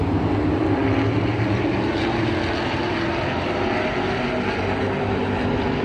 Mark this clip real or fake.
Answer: real